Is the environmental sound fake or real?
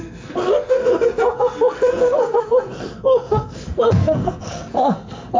fake